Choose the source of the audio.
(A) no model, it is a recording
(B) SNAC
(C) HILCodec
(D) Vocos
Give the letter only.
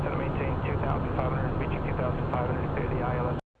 A